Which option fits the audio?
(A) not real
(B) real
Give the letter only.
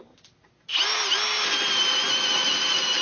B